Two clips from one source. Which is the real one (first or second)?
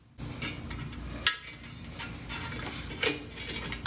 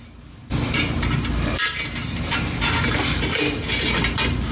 first